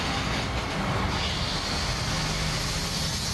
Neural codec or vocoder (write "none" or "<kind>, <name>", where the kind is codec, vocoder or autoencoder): none